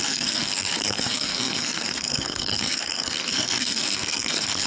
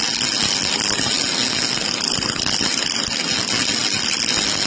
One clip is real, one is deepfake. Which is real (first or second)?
second